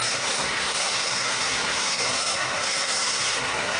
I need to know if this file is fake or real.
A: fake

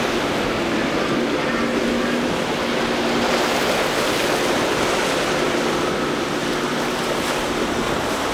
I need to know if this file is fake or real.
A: real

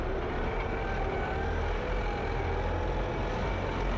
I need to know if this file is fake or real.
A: real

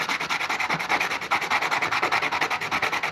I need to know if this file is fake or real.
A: real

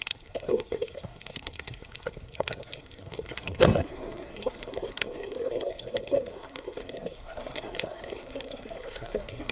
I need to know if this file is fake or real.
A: fake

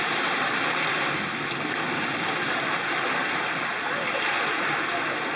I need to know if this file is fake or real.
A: real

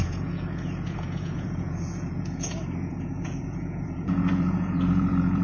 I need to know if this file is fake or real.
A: fake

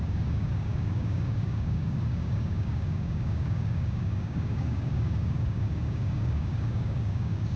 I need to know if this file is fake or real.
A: fake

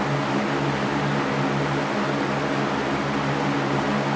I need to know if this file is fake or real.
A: real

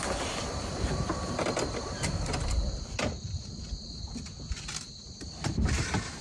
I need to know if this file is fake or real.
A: real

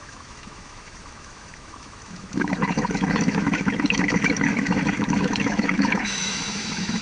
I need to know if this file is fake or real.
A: fake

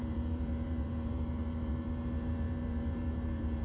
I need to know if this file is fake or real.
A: fake